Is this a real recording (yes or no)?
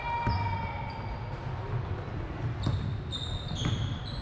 yes